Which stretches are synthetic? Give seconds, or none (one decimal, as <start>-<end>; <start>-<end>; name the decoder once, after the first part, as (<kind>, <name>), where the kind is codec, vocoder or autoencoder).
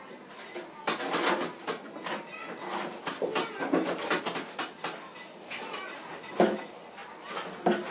none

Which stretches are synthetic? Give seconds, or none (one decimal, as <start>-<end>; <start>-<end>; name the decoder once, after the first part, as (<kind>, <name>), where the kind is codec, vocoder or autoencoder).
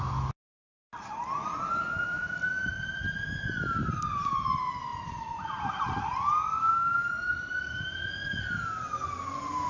6.6-7.1 (codec, DAC)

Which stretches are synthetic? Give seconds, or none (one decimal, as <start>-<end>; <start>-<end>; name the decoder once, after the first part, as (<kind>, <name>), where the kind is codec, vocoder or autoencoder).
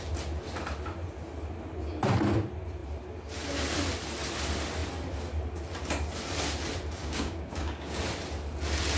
7.0-8.0 (codec, DAC)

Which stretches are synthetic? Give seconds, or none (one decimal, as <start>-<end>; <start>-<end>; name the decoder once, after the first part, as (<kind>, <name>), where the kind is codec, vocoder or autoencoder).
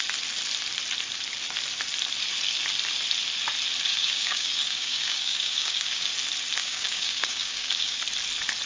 3.9-6.1 (codec, DAC); 6.6-8.0